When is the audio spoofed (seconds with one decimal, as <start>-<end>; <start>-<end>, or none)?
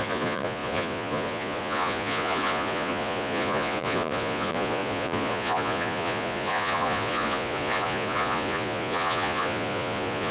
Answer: 0.0-10.3